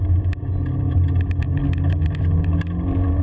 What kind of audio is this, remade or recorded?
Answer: recorded